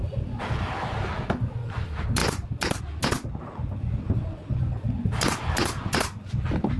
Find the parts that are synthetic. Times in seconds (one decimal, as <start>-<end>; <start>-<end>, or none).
none